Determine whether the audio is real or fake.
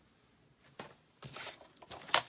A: real